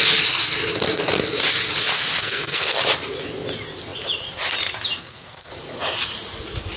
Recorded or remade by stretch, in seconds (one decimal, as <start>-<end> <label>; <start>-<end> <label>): 0.0-2.2 recorded; 2.2-2.8 remade; 2.8-5.0 recorded; 5.0-5.5 remade; 5.5-6.8 recorded